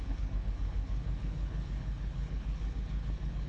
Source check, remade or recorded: remade